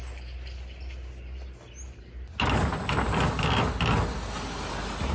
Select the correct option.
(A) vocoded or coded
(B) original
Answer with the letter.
B